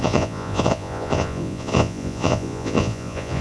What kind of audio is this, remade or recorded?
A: remade